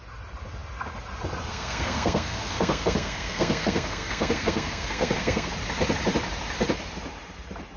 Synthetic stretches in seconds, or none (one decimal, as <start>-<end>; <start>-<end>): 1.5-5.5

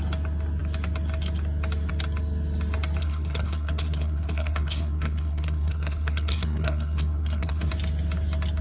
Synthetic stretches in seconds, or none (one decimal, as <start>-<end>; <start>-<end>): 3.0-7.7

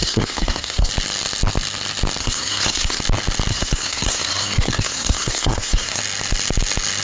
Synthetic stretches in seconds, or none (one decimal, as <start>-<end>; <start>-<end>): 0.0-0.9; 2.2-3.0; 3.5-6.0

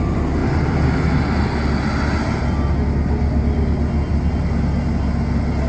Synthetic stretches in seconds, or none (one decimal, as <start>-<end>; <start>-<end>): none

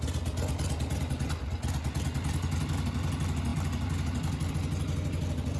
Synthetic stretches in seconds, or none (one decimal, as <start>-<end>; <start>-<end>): none

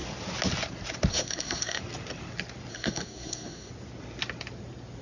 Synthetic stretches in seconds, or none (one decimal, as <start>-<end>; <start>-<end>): 1.1-1.8; 2.7-3.7